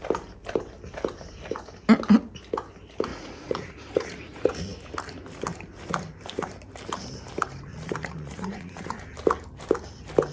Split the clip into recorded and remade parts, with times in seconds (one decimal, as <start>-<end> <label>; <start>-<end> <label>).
0.0-3.1 recorded; 3.1-4.6 remade; 4.6-7.7 recorded; 7.7-9.1 remade; 9.1-10.3 recorded